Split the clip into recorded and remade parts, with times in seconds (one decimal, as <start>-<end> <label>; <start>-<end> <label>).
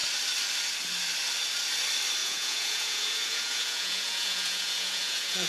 0.0-2.2 recorded; 2.2-5.5 remade